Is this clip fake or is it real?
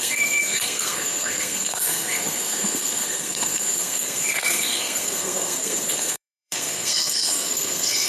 fake